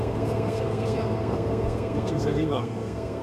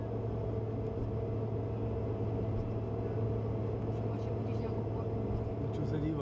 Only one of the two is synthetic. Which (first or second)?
first